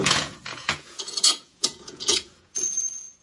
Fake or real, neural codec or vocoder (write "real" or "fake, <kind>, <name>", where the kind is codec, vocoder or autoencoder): fake, vocoder, Vocos